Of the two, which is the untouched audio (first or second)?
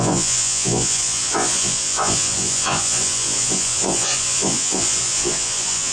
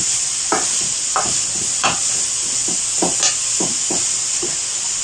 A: second